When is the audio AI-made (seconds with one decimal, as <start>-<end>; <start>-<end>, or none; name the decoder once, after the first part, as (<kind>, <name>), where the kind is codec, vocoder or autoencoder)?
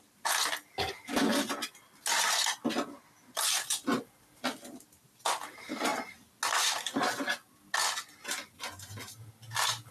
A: none